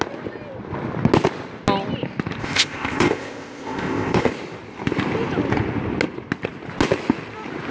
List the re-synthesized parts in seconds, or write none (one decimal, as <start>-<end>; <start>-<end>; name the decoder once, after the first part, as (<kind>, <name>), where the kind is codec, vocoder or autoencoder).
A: 2.4-4.3 (codec, ZipCodec)